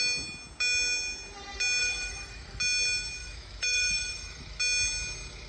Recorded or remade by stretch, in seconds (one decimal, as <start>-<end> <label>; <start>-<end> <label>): 0.0-1.8 recorded; 1.8-2.6 remade; 2.6-3.2 recorded; 3.2-4.6 remade; 4.6-5.5 recorded